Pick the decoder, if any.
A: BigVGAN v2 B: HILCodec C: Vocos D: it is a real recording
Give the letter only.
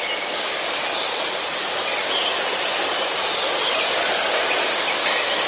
D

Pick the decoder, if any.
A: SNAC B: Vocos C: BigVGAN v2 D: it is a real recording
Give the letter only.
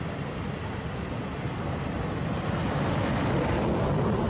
D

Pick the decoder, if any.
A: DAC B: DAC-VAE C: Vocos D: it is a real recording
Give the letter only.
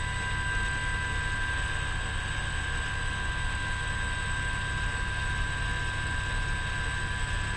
D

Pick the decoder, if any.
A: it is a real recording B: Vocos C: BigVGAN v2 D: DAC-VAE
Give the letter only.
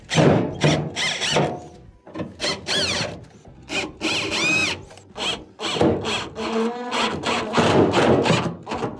A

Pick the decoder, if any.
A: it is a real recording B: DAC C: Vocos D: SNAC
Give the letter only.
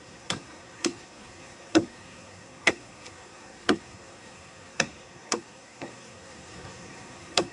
D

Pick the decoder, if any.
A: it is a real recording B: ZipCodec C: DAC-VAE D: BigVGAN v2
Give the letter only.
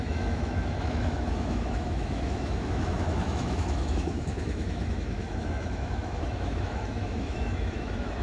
C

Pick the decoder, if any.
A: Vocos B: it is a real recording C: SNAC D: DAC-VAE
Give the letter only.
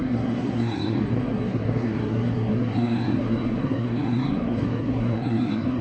C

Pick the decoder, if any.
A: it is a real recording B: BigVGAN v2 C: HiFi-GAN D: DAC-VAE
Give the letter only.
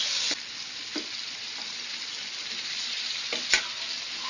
B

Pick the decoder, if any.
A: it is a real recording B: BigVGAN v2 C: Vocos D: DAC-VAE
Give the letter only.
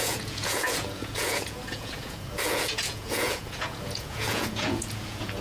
C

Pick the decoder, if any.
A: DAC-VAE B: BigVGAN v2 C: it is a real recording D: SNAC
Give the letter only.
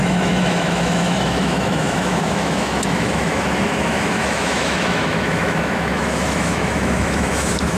A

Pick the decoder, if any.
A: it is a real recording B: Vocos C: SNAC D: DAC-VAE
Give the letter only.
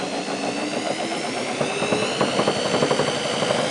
A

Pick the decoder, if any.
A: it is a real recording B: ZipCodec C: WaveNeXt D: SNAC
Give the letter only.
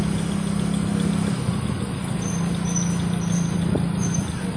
A